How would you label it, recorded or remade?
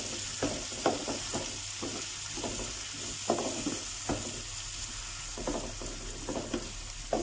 recorded